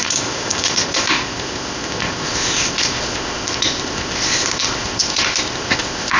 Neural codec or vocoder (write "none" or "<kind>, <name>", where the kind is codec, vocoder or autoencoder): codec, ZipCodec